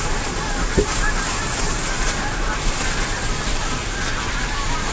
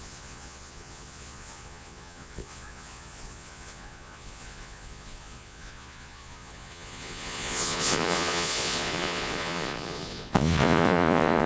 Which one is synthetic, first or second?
second